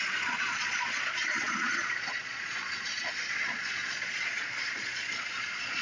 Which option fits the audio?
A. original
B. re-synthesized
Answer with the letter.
B